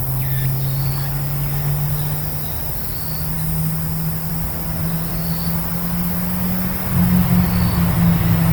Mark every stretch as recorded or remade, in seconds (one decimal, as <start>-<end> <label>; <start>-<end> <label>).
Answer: 0.0-8.5 recorded